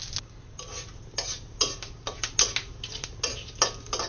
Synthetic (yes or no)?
no